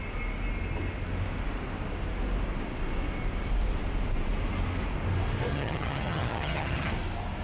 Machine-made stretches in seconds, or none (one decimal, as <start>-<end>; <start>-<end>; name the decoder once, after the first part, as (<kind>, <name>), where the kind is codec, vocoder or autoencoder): 5.5-6.9 (vocoder, HiFi-GAN)

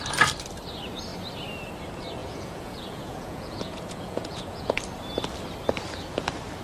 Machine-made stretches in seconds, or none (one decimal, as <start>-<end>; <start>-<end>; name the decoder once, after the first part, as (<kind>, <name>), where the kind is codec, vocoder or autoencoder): 2.2-4.8 (vocoder, Vocos)